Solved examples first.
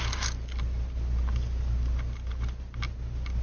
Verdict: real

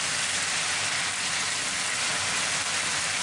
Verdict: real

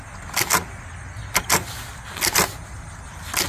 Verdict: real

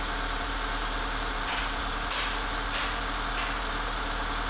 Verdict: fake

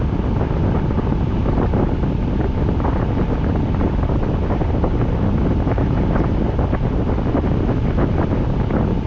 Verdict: real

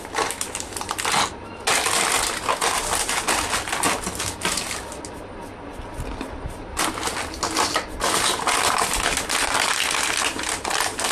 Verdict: real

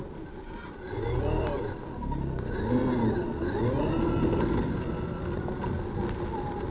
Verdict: real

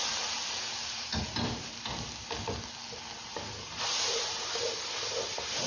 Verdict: real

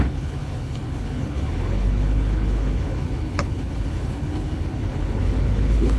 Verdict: fake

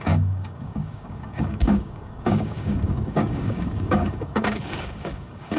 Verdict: fake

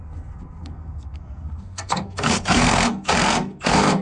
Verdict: fake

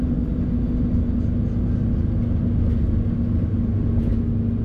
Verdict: real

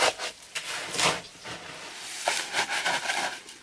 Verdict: real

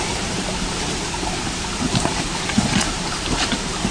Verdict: fake